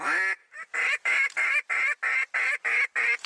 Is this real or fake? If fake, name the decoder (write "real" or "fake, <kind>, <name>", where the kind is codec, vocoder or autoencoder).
real